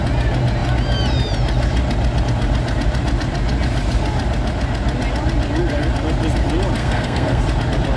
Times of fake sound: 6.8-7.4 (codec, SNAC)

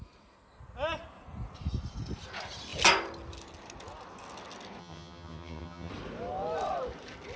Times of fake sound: 4.8-5.9 (vocoder, HiFi-GAN)